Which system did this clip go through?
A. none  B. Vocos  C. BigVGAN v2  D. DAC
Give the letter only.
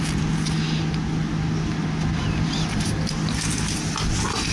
A